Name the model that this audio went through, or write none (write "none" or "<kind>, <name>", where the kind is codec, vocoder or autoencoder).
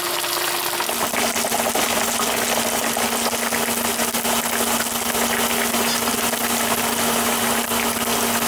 none